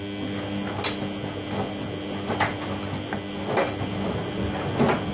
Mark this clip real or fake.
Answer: real